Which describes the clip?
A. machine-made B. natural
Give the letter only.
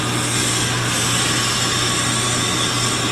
B